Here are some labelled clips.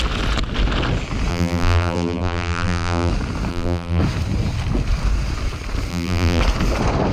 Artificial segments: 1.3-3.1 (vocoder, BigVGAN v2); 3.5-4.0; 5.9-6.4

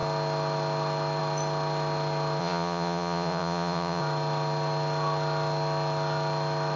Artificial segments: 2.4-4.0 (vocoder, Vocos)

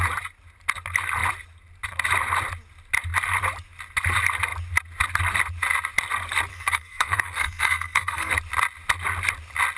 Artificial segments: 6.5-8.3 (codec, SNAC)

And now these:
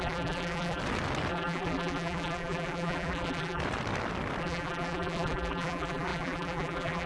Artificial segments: 0.0-0.8 (vocoder, BigVGAN v2); 1.3-3.6; 4.4-7.1

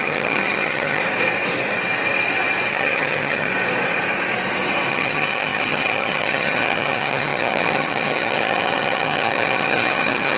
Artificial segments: 0.0-1.0 (vocoder, HiFi-GAN); 2.7-3.5; 4.9-10.4

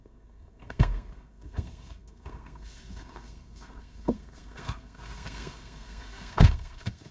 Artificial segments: 0.0-7.1 (codec, SNAC)